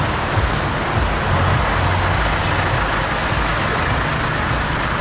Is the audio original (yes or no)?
yes